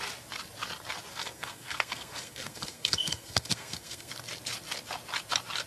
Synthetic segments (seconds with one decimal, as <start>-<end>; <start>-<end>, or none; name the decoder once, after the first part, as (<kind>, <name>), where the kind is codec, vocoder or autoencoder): 1.1-4.1 (codec, SNAC)